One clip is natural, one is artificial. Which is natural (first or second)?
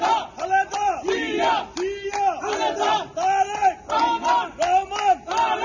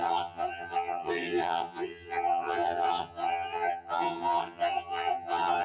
first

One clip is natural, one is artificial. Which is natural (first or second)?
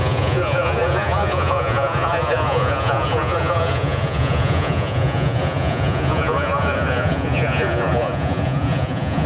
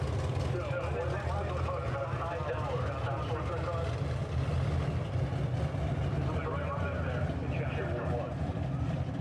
second